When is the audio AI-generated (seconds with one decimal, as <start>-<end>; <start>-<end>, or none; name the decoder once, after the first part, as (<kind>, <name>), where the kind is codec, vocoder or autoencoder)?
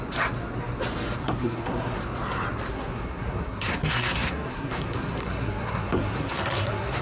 1.2-2.0 (codec, SNAC); 2.7-7.0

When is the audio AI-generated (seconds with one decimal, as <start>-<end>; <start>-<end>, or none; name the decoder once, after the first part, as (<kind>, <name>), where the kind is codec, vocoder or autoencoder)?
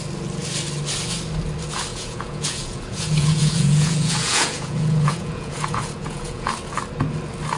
1.9-6.5 (vocoder, Vocos)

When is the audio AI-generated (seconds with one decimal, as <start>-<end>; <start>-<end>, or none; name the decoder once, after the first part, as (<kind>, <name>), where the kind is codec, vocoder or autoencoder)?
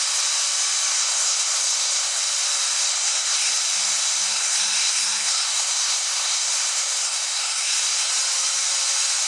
0.9-2.2 (codec, SNAC); 2.9-3.5; 4.3-8.1